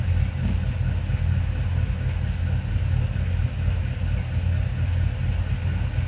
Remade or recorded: recorded